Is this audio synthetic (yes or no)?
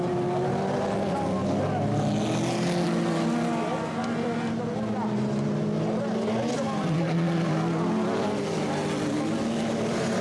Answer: no